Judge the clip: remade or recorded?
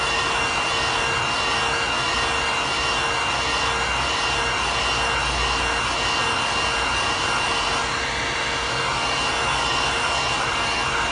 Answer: recorded